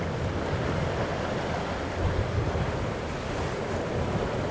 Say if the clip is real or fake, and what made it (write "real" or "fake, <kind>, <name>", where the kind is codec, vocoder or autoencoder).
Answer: real